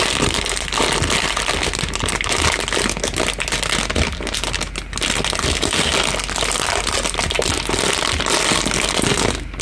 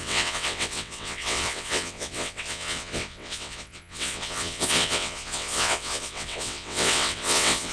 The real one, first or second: first